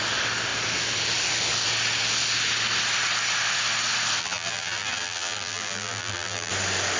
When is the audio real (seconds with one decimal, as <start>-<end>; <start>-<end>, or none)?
0.0-4.2; 6.5-7.0